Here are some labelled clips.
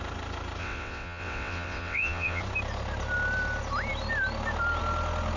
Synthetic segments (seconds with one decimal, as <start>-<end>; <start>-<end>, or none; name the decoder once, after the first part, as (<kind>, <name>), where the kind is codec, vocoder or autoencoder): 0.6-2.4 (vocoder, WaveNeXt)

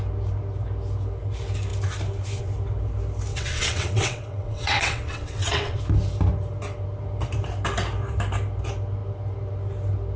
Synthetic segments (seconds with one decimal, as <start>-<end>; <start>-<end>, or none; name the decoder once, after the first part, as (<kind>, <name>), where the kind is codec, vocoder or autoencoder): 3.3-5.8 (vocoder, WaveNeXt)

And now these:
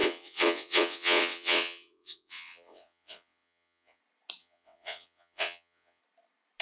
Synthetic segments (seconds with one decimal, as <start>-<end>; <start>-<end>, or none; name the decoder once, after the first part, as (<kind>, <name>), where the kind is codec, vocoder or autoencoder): 0.0-4.0 (vocoder, WaveNeXt); 4.4-6.0

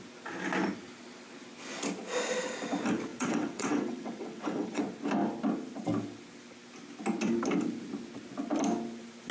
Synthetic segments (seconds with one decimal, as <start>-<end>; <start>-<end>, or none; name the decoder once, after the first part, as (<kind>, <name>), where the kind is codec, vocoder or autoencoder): 3.1-4.8 (vocoder, WaveNeXt)

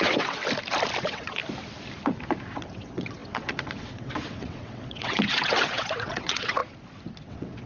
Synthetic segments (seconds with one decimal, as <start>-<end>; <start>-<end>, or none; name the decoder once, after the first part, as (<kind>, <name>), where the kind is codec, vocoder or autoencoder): 0.0-0.4 (vocoder, WaveNeXt); 1.0-1.4; 2.5-6.6; 7.3-7.7